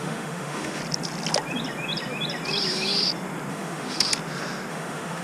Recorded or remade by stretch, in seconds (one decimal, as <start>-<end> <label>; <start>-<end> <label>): 0.0-0.8 remade; 0.8-3.5 recorded; 3.5-4.1 remade; 4.1-4.7 recorded; 4.7-5.2 remade